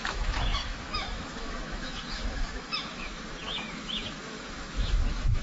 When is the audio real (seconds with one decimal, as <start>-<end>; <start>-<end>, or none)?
none